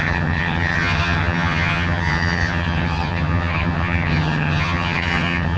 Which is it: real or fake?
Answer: fake